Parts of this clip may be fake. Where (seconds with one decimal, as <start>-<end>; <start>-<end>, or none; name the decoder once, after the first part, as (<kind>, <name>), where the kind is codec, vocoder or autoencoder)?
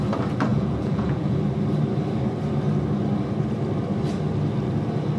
0.5-1.4 (vocoder, Vocos)